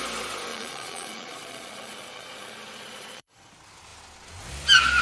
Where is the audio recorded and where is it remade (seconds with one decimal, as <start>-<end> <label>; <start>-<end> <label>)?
0.0-0.5 recorded; 0.5-3.5 remade; 3.5-5.0 recorded